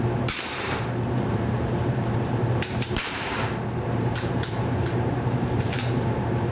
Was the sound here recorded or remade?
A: remade